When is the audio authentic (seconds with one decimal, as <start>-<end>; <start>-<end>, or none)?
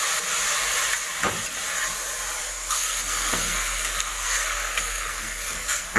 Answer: 0.0-2.4